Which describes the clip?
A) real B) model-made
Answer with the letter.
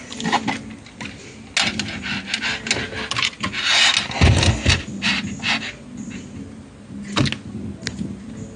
A